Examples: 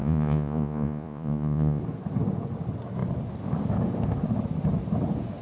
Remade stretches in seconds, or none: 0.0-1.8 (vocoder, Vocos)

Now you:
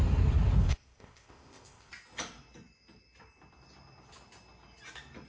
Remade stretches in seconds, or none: 0.6-1.9 (codec, ZipCodec)

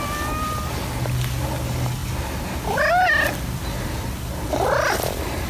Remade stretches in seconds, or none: none